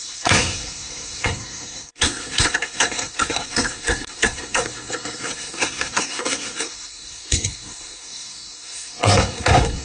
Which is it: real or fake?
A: fake